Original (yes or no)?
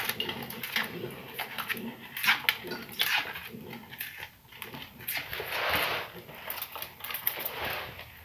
yes